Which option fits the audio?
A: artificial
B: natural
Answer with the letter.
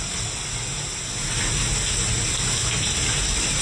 B